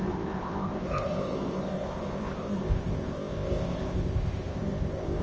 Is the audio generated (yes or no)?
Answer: yes